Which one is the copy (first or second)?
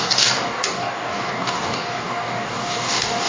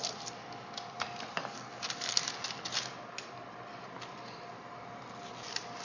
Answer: first